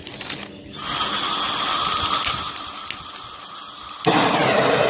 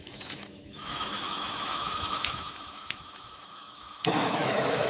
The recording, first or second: first